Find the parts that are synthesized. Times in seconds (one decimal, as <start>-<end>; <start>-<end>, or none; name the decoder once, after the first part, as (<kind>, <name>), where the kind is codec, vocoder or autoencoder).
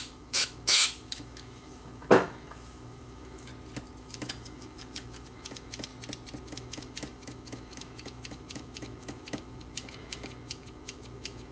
0.0-3.5 (autoencoder, DAC-VAE); 4.0-5.9; 6.4-11.5